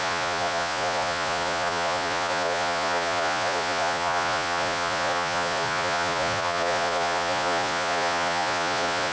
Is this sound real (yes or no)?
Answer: no